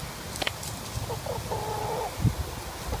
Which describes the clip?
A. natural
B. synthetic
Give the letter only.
A